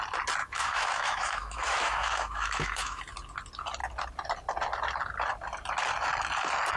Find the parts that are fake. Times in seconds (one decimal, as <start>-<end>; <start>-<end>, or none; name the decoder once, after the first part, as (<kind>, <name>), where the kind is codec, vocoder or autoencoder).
0.4-3.0 (autoencoder, DAC-VAE)